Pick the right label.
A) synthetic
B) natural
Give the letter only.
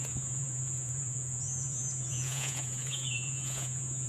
A